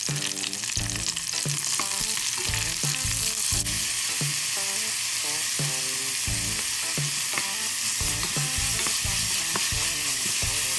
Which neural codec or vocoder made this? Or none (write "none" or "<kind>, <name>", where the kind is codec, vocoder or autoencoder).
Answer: none